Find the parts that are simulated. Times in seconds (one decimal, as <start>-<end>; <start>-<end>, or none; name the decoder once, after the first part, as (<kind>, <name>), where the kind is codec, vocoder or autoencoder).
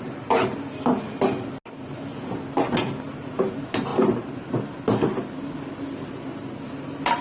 none